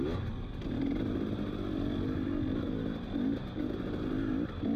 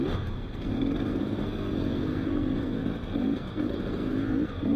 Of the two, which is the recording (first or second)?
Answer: first